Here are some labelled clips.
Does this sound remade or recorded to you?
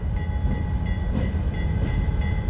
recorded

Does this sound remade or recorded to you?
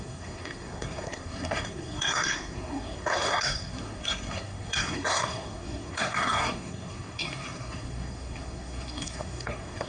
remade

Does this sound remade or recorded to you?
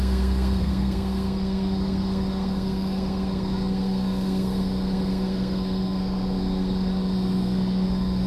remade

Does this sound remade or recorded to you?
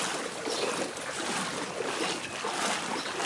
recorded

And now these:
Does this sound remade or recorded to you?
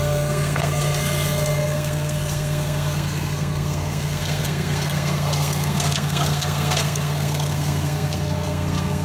remade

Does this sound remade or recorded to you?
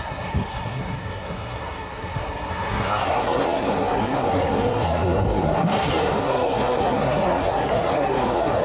remade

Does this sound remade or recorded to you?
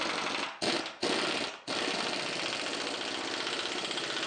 recorded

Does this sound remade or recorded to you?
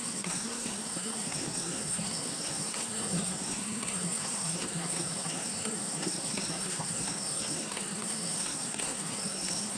remade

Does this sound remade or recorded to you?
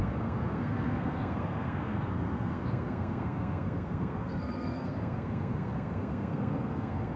remade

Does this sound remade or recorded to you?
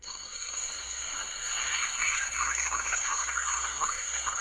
remade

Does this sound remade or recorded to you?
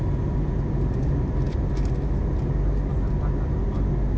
recorded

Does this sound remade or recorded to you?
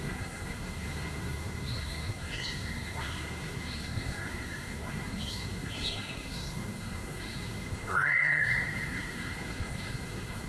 remade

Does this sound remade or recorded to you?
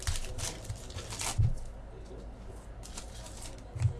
recorded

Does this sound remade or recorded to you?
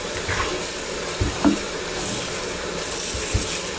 recorded